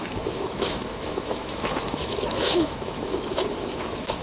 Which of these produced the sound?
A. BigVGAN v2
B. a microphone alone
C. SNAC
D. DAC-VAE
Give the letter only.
D